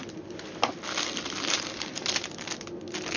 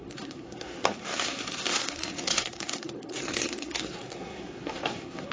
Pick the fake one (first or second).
second